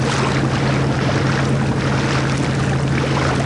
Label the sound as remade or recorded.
recorded